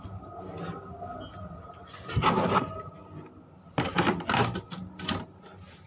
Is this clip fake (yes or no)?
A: no